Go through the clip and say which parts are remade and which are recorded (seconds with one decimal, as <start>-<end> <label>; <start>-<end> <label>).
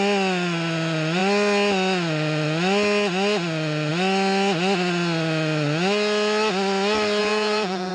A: 0.0-7.2 recorded; 7.2-7.9 remade